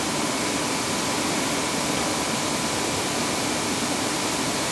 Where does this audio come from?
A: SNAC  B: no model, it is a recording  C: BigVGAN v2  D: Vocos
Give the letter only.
B